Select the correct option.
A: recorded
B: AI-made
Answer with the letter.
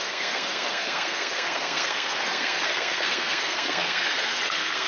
B